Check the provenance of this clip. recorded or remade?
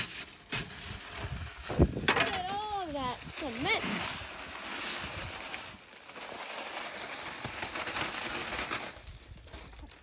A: recorded